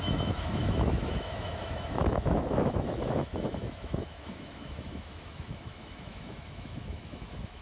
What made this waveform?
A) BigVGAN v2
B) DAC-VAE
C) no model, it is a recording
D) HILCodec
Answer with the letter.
B